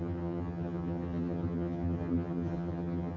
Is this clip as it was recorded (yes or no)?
no